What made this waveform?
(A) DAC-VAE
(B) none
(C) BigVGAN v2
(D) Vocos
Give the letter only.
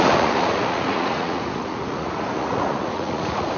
D